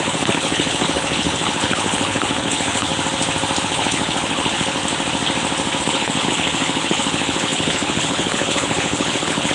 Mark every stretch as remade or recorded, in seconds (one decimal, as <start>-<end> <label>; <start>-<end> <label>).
0.0-2.9 remade; 2.9-3.6 recorded; 3.6-4.8 remade; 4.8-5.8 recorded; 5.8-9.5 remade